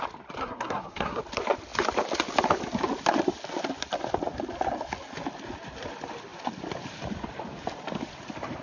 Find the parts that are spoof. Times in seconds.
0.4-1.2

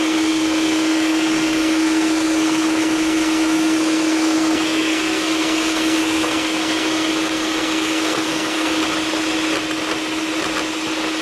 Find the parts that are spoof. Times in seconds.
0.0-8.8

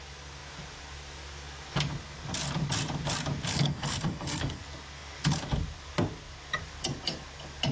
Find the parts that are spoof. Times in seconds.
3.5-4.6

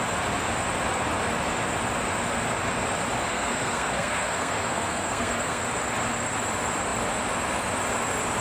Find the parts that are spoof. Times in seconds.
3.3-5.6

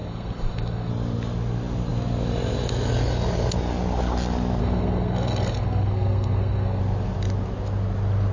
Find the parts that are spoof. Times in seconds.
0.0-0.9; 4.6-6.8

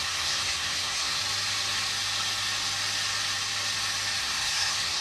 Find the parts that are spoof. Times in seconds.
0.0-1.2; 4.2-5.0

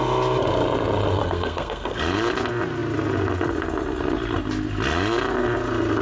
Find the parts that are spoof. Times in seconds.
1.2-2.0

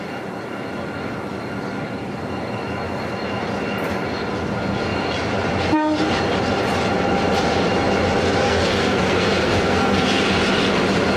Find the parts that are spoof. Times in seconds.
8.4-10.2